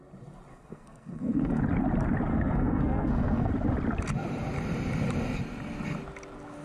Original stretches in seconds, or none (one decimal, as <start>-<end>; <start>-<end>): 0.0-0.5; 1.6-2.3; 3.5-6.6